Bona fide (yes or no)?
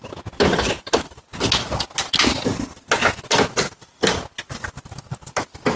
yes